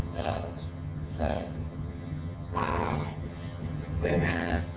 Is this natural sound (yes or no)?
no